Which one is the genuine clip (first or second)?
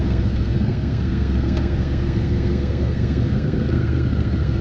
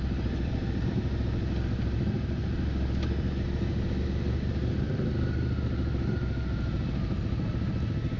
second